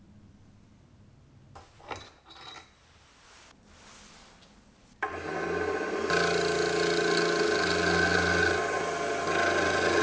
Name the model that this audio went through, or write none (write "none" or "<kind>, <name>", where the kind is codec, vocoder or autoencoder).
none